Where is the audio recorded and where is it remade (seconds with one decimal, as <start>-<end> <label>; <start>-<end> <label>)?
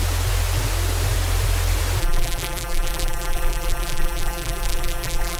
0.0-2.0 recorded; 2.0-5.4 remade